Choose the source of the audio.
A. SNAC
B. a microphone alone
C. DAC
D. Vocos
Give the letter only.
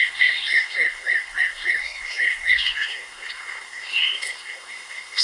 A